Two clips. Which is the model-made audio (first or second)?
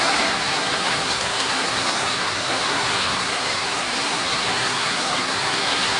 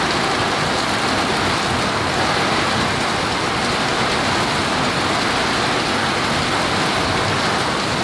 first